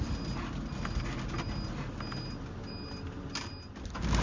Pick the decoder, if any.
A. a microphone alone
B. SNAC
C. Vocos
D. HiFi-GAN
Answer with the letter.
A